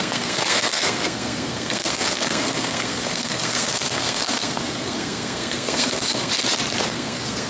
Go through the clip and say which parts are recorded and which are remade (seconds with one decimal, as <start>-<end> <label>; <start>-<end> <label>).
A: 0.0-6.3 remade; 6.3-6.9 recorded; 6.9-7.5 remade